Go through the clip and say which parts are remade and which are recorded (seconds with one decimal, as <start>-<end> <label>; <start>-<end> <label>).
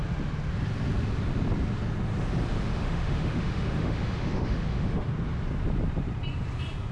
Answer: 0.0-2.5 recorded; 2.5-5.1 remade; 5.1-6.9 recorded